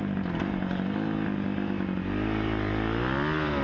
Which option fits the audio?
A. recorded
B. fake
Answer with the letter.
A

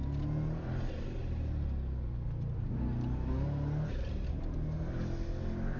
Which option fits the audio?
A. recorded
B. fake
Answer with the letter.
A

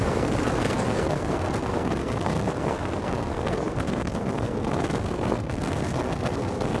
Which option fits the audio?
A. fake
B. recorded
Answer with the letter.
A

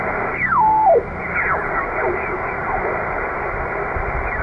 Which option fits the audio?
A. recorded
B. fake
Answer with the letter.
A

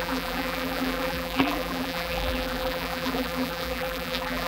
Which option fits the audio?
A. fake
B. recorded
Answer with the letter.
A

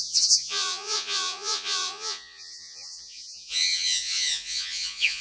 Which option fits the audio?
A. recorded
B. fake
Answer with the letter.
B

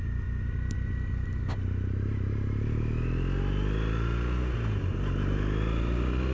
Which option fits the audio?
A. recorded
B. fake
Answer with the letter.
A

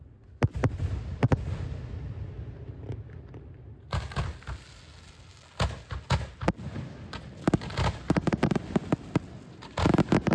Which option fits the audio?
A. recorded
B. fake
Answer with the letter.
A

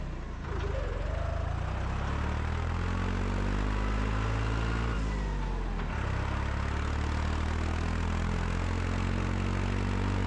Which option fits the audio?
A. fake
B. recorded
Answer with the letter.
B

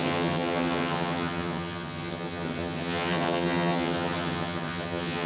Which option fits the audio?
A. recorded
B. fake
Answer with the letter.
B